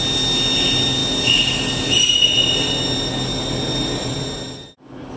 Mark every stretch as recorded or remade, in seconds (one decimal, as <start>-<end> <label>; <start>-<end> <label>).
0.0-5.2 recorded